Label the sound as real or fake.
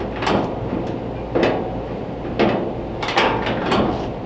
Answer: real